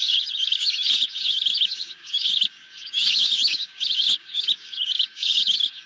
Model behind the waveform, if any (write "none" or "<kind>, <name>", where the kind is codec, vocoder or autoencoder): codec, DAC